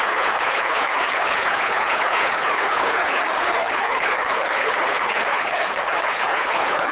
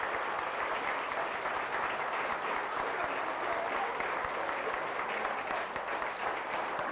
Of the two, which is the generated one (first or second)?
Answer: first